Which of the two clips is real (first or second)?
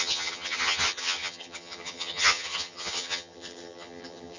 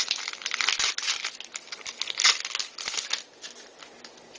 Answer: second